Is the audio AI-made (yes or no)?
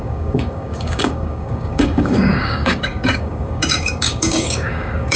yes